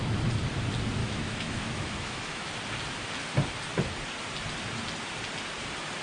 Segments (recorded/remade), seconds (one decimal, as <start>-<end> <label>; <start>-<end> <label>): 0.0-1.0 recorded; 1.0-2.5 remade; 2.5-6.0 recorded